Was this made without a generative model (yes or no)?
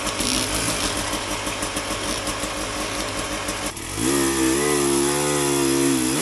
yes